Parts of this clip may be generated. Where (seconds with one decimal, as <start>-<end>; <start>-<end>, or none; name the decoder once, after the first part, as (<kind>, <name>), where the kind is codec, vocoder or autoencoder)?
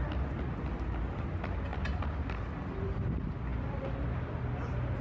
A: 3.5-4.4 (vocoder, BigVGAN v2)